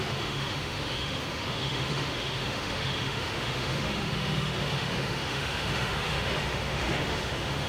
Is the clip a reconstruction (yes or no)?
yes